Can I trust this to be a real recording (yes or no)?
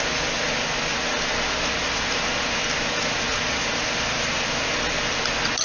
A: yes